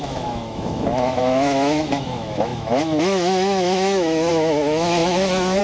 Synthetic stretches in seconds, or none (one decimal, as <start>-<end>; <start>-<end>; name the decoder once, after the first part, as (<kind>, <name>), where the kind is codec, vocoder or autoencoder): 0.0-5.6 (autoencoder, DAC-VAE)